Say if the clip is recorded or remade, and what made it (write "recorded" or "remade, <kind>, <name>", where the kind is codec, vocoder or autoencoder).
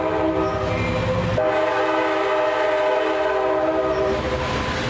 recorded